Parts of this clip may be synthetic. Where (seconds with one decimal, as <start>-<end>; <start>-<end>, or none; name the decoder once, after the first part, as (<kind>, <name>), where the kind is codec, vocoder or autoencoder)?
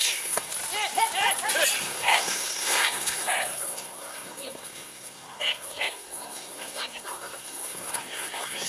0.0-0.5 (codec, SNAC); 1.8-8.7